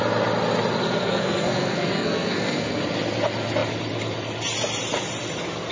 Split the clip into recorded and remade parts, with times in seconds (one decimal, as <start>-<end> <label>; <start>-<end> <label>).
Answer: 0.0-1.0 recorded; 1.0-2.8 remade; 2.8-5.7 recorded